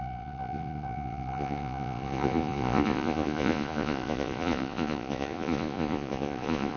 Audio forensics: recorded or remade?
remade